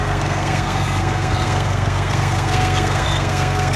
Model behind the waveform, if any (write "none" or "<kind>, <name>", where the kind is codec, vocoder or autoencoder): codec, SNAC